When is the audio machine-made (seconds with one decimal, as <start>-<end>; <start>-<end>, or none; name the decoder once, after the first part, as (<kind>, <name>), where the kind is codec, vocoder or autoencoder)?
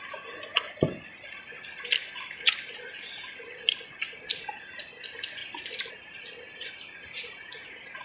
none